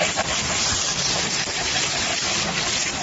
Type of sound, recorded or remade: recorded